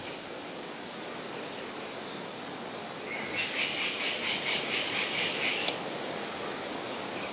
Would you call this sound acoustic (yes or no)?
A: no